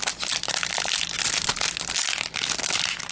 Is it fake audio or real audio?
real